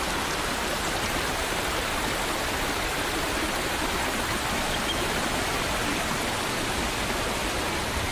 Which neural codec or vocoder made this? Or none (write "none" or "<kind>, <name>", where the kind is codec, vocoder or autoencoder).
none